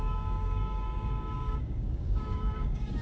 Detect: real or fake fake